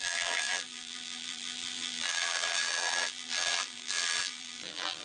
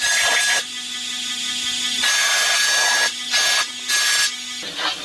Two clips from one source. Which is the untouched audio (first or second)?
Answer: second